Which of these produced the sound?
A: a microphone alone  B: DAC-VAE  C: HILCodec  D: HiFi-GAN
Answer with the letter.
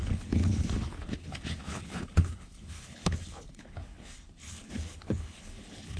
C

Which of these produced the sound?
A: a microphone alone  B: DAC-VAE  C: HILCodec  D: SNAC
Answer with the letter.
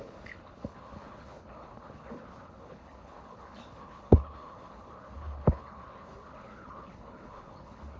C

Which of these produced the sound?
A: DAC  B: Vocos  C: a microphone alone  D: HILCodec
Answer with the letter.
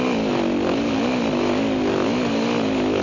C